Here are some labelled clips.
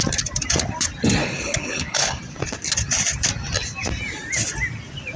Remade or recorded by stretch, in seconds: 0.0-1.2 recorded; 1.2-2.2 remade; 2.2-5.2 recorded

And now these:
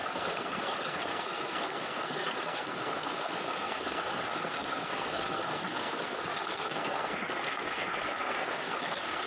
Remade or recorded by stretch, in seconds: 0.0-9.3 remade

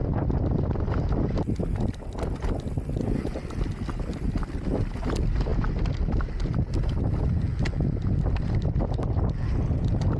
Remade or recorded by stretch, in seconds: 0.0-10.2 recorded

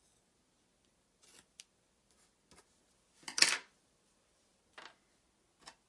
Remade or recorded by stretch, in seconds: 0.0-5.9 recorded